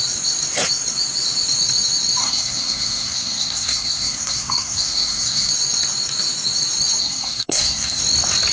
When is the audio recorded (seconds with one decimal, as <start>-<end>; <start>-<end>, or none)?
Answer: 0.0-2.2; 5.5-7.0; 8.0-8.5